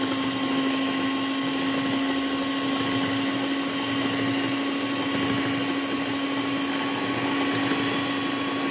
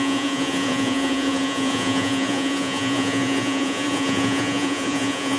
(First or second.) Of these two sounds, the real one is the first